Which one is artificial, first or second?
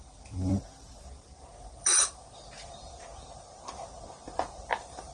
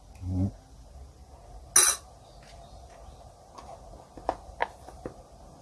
first